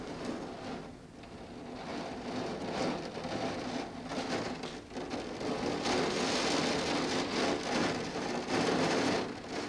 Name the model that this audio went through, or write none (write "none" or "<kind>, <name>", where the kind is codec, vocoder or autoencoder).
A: none